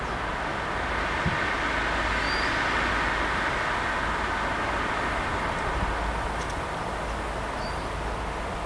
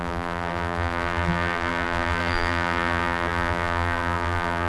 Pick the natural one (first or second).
first